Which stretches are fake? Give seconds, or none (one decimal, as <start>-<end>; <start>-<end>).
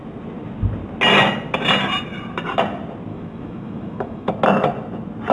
3.1-4.3